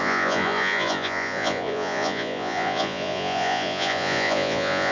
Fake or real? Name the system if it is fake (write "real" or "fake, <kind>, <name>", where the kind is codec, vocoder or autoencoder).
fake, vocoder, Vocos